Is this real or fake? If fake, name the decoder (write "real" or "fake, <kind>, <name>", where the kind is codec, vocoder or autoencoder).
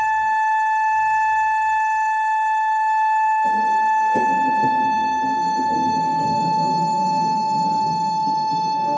fake, codec, SNAC